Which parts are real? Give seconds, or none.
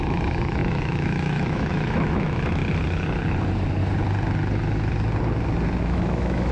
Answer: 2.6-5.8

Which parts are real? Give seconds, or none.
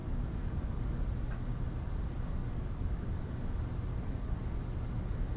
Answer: 1.0-2.4; 3.2-3.9; 4.6-5.4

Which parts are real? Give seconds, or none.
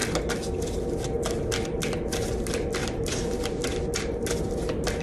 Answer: 0.0-2.8; 3.5-5.0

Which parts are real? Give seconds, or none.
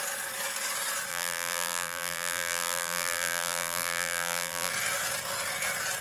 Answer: 0.0-1.1; 4.7-6.0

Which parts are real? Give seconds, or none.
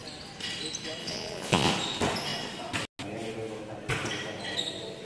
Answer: 0.0-1.0; 1.7-5.0